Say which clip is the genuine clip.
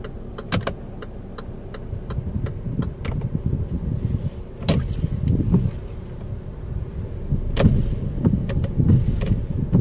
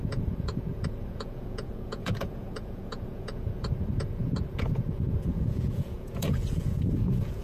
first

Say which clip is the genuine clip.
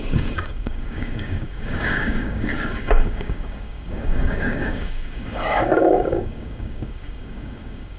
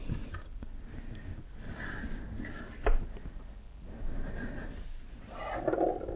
second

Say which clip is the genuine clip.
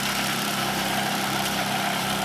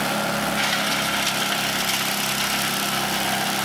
second